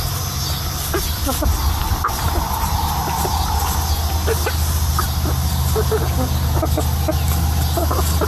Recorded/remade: recorded